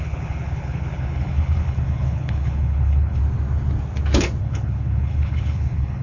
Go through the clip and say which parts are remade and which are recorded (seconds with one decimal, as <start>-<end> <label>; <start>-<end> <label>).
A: 0.0-3.2 remade; 3.2-4.4 recorded; 4.4-6.0 remade

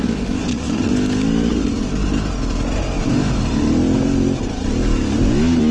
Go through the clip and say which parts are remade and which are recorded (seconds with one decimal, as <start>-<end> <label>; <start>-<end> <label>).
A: 0.0-0.4 recorded; 0.4-0.9 remade; 0.9-5.7 recorded

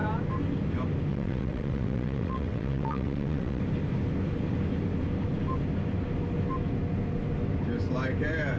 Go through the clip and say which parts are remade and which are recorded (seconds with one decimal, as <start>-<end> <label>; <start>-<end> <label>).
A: 0.0-1.1 recorded; 1.1-3.6 remade; 3.6-8.6 recorded

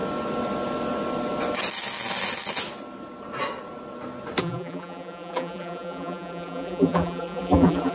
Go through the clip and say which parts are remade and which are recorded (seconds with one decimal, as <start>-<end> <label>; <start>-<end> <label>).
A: 0.0-4.4 recorded; 4.4-7.9 remade

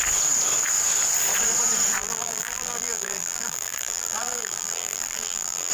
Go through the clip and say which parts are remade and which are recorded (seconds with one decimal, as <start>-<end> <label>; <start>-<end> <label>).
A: 0.0-2.0 recorded; 2.0-5.7 remade

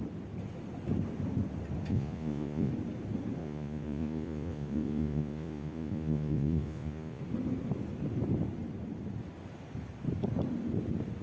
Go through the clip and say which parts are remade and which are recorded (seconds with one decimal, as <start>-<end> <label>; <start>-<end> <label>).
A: 0.0-1.9 recorded; 1.9-2.7 remade; 2.7-3.4 recorded; 3.4-7.2 remade; 7.2-11.2 recorded

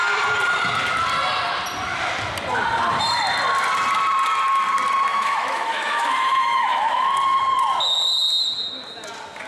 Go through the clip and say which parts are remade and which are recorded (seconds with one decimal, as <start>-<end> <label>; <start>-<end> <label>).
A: 0.0-5.1 recorded; 5.1-7.1 remade; 7.1-9.5 recorded

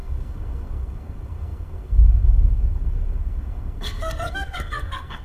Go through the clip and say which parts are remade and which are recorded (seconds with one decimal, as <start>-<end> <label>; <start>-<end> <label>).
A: 0.0-5.2 remade